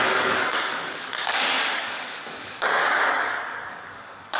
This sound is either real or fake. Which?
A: fake